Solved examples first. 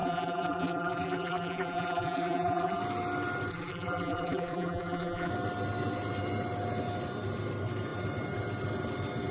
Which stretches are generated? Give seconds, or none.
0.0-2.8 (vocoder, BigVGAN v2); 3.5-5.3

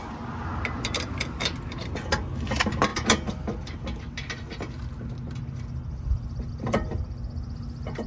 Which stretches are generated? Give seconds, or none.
none

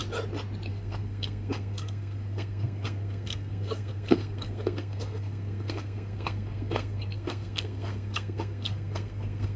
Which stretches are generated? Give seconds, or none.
0.7-9.6 (codec, SNAC)

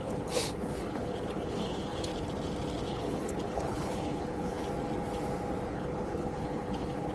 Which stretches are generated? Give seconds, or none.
0.0-2.1 (codec, HILCodec); 2.9-4.6; 5.7-7.1

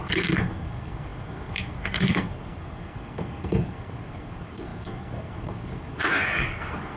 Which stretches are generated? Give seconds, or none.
0.0-7.0 (codec, SNAC)

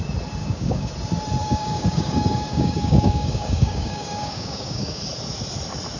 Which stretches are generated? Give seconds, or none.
0.4-0.9 (codec, DAC); 1.4-5.0

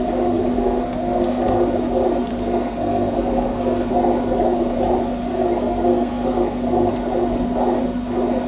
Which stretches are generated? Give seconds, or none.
0.6-1.5 (codec, SNAC); 2.3-3.9; 5.3-6.9

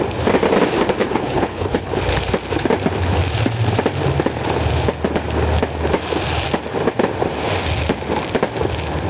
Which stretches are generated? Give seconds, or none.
1.0-2.0 (codec, HILCodec)